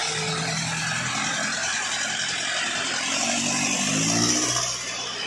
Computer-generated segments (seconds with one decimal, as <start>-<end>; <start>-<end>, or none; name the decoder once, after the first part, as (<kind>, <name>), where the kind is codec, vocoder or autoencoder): 0.0-0.9 (vocoder, BigVGAN v2); 1.6-3.9